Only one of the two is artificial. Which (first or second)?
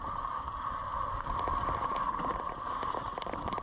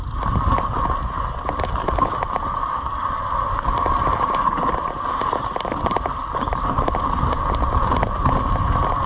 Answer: first